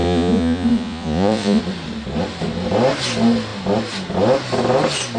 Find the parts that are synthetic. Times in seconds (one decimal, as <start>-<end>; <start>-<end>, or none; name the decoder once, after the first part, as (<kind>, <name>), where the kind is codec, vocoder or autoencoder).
0.0-1.6 (vocoder, Vocos)